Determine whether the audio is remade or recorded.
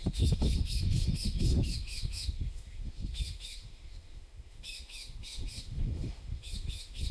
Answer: remade